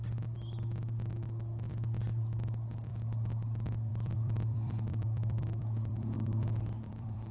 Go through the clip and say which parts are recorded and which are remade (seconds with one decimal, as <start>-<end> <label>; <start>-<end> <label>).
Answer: 0.0-3.9 recorded; 3.9-7.3 remade